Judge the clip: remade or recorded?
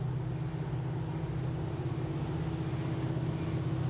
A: recorded